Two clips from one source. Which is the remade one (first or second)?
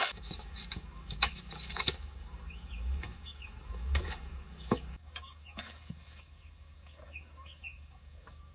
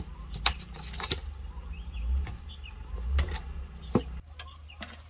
first